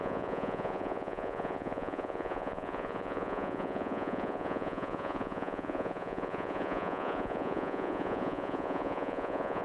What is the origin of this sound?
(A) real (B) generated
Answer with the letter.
B